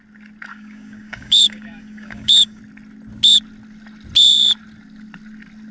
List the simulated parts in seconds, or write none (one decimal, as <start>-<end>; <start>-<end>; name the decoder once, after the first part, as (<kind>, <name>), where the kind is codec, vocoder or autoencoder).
0.5-2.6 (codec, DAC)